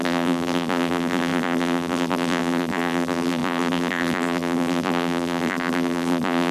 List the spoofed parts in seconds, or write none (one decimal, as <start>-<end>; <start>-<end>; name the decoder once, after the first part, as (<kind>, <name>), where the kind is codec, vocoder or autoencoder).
0.0-6.5 (vocoder, BigVGAN v2)